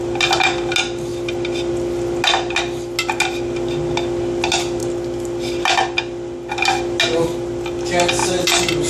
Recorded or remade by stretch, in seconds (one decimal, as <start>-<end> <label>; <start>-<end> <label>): 0.0-1.1 recorded; 1.1-1.7 remade; 1.7-8.9 recorded